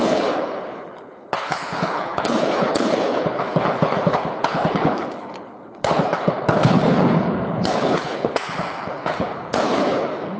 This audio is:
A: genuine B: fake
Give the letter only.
B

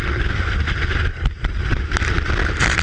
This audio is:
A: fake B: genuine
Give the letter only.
B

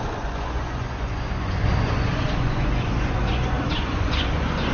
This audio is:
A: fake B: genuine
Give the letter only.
A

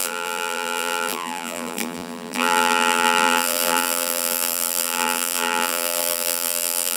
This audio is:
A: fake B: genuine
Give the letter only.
A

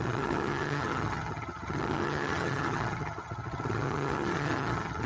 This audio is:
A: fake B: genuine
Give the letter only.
A